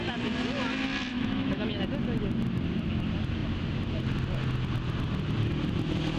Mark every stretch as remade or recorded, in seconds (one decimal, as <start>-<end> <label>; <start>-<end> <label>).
0.0-1.1 recorded; 1.1-1.8 remade; 1.8-6.2 recorded